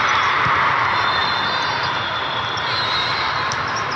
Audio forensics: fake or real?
real